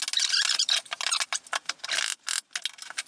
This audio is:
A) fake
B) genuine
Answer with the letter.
B